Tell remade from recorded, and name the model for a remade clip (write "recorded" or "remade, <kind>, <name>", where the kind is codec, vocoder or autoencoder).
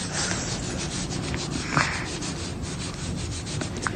recorded